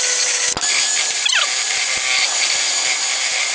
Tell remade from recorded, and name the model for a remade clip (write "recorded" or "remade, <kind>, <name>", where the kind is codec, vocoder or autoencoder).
recorded